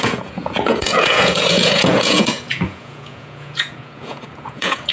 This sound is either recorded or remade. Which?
remade